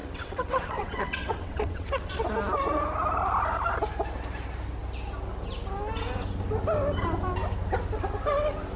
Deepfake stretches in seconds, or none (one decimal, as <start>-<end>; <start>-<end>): 0.0-2.2

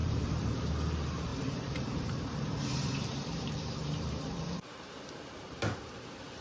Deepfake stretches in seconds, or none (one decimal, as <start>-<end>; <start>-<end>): 0.0-0.6; 1.3-4.9

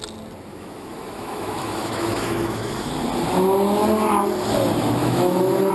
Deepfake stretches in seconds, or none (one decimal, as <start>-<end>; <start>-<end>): 0.5-2.9; 5.0-5.7

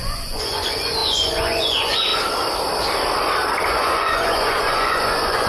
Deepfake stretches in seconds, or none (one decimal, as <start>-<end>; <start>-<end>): 0.0-2.1; 3.7-5.5

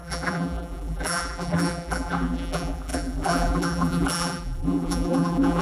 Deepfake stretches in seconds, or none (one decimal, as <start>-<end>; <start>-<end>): 0.0-5.6

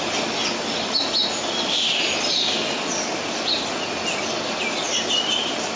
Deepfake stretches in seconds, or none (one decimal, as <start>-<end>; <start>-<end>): none

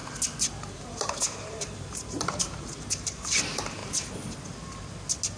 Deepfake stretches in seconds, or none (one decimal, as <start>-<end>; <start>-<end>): 0.6-3.8